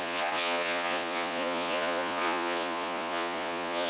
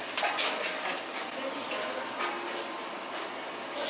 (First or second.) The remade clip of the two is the first